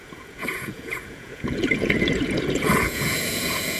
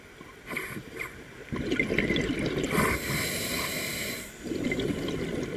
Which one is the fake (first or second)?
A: first